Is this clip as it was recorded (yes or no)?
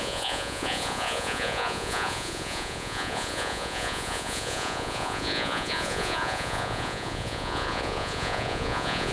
no